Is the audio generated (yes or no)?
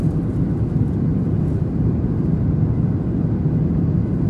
no